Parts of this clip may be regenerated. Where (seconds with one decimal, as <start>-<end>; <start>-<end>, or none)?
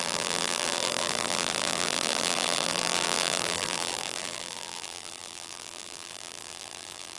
0.0-7.2